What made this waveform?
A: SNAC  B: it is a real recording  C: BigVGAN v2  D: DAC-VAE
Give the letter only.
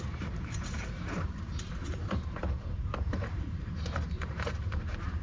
C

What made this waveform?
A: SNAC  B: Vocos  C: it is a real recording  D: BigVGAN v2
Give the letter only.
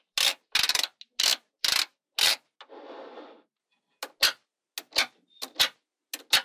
C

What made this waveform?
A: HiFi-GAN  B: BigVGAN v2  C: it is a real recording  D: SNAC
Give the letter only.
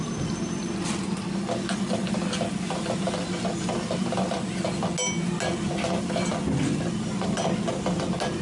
C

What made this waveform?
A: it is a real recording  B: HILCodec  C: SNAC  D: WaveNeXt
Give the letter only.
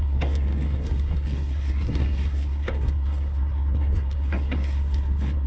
C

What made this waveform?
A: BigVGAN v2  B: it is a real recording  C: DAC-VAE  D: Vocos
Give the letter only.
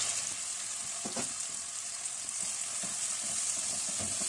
B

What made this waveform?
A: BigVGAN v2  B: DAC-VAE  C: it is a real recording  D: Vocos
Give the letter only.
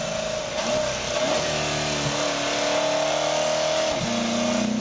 C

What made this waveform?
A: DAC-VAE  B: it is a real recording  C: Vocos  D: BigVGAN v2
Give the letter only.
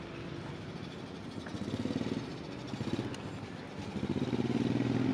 B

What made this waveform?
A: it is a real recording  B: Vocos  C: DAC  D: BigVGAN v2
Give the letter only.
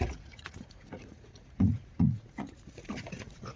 B